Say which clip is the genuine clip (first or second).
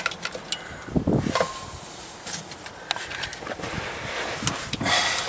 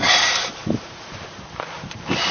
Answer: first